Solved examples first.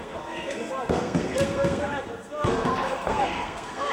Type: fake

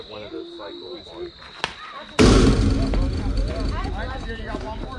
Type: real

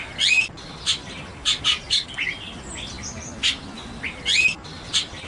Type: real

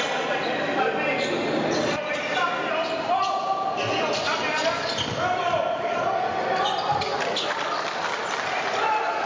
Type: real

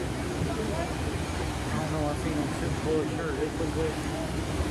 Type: real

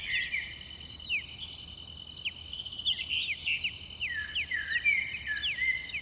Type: real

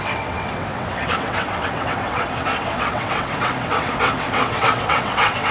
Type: fake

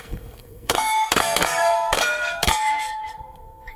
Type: fake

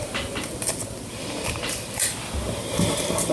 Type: real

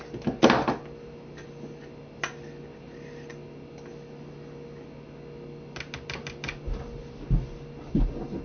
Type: real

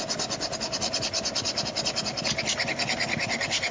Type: real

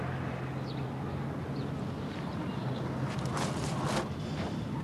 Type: real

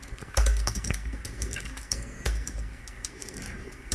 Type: fake